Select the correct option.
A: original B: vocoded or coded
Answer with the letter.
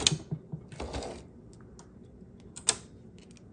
A